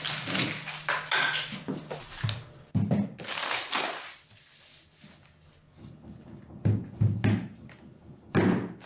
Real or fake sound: real